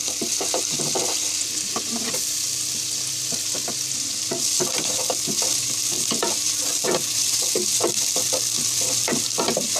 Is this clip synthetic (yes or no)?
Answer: no